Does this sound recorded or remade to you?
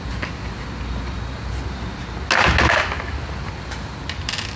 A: recorded